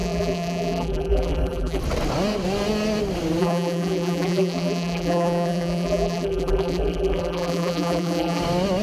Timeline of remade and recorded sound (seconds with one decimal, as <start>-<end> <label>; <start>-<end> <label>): 0.0-1.8 remade; 1.8-3.4 recorded; 3.4-8.4 remade; 8.4-8.8 recorded